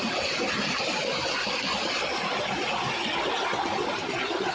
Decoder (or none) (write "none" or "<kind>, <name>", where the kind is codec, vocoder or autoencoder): none